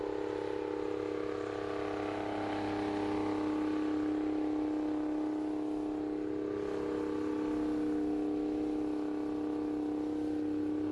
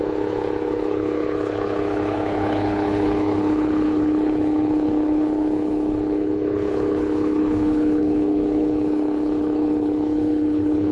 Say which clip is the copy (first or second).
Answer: second